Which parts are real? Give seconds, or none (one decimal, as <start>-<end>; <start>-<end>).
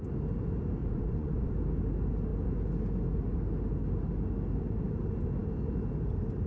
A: 0.0-0.8; 1.5-6.5